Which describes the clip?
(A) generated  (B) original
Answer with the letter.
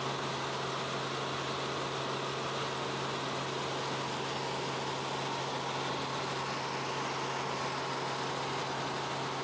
B